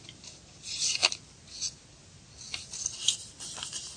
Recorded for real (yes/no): yes